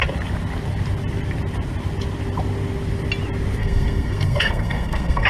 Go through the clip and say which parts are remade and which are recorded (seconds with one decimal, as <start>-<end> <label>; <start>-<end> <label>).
0.0-3.6 recorded; 3.6-5.3 remade